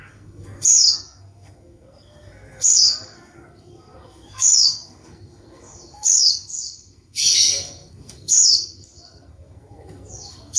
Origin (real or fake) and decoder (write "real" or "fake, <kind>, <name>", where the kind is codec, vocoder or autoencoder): fake, codec, SNAC